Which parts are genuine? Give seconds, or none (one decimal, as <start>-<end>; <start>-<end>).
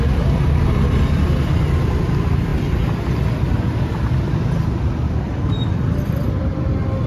0.0-7.1